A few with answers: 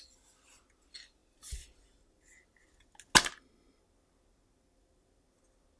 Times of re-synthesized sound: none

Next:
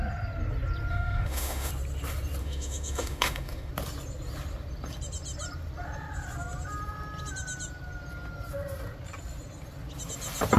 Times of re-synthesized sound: 0.9-1.7; 2.4-3.7

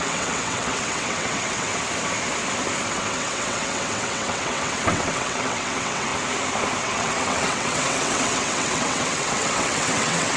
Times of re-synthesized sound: 0.0-1.7; 2.9-6.1; 6.8-10.4

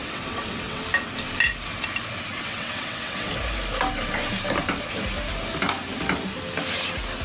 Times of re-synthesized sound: 0.0-0.8; 2.3-3.3

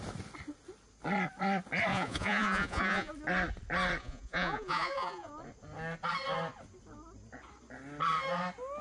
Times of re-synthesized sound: 1.9-3.1; 4.0-5.3

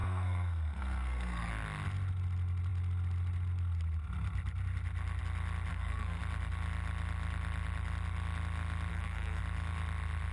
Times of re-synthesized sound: 0.0-1.5; 5.7-6.2; 8.9-9.4